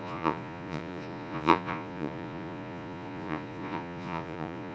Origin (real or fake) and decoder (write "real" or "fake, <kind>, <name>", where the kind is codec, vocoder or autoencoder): fake, vocoder, Vocos